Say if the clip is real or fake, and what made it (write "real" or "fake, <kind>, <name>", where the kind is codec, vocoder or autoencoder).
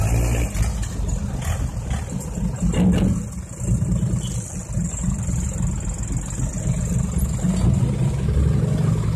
real